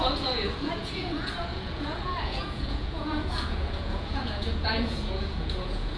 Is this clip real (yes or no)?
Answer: no